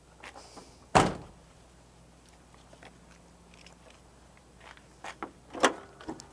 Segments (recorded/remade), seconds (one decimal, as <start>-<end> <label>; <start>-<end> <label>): 0.0-6.3 recorded

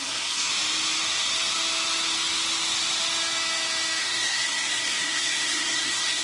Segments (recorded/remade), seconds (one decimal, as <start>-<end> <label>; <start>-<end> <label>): 0.0-0.5 remade; 0.5-4.0 recorded; 4.0-6.2 remade

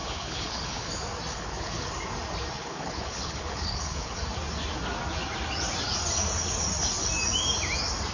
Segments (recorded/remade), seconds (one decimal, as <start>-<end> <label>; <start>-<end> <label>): 0.0-0.9 remade; 0.9-1.3 recorded; 1.3-1.9 remade; 1.9-2.6 recorded; 2.6-4.2 remade; 4.2-8.1 recorded

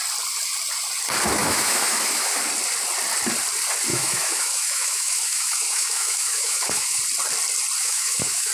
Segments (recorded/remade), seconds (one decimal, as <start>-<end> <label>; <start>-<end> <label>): 0.0-1.4 recorded; 1.4-2.4 remade; 2.4-3.9 recorded; 3.9-7.0 remade; 7.0-7.8 recorded; 7.8-8.5 remade

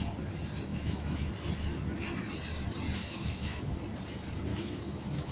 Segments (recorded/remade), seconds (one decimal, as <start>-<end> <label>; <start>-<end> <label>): 0.0-0.7 recorded; 0.7-1.3 remade; 1.3-3.0 recorded; 3.0-3.7 remade; 3.7-4.5 recorded; 4.5-5.3 remade

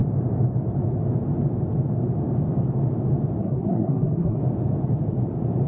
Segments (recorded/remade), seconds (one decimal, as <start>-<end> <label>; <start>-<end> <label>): 0.0-3.4 recorded; 3.4-4.4 remade; 4.4-5.7 recorded

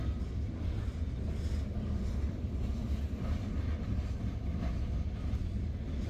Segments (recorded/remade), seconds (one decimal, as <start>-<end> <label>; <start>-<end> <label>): 0.0-6.1 recorded

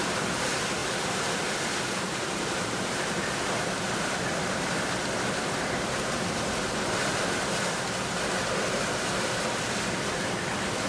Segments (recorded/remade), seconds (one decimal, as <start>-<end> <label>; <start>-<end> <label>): 0.0-10.9 recorded